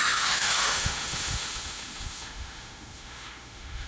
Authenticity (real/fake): fake